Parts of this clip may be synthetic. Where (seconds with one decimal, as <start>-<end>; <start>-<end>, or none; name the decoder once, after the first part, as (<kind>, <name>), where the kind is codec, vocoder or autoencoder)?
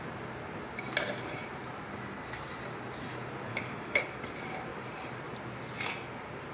3.5-4.0 (autoencoder, DAC-VAE)